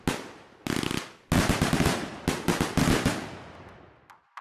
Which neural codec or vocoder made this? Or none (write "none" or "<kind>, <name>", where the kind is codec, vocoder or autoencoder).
none